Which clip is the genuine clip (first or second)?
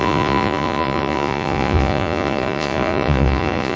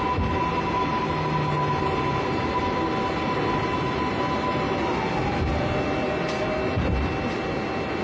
second